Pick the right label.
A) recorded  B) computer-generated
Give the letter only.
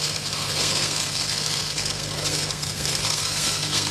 B